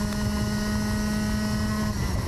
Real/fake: real